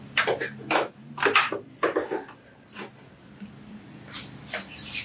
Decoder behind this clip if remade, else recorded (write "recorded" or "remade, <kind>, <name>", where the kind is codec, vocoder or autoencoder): remade, vocoder, BigVGAN v2